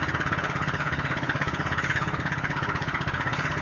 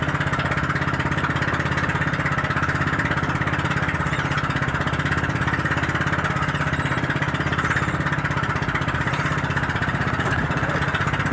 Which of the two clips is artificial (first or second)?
first